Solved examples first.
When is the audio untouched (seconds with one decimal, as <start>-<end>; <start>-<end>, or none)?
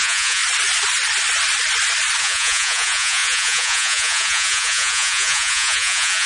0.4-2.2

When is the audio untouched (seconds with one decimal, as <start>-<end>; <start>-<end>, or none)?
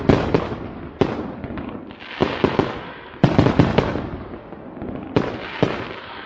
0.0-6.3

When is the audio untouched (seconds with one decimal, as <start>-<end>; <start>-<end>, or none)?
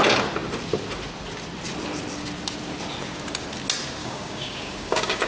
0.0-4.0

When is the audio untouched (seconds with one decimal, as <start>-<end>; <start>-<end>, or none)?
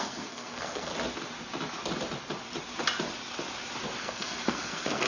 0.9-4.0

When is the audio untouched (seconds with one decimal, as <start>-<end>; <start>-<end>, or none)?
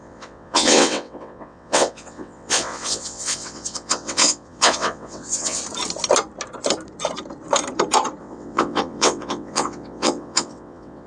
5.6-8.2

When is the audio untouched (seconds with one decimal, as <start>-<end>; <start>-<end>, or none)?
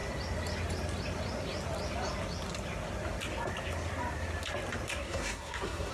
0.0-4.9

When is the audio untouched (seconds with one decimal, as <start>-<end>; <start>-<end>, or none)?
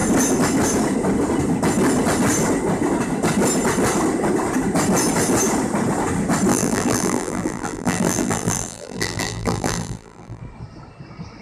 0.0-6.5; 10.4-11.4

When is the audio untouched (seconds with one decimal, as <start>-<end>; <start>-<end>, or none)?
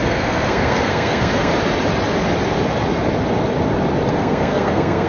1.5-4.1